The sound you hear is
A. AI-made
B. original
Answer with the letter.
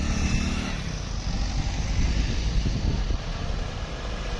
B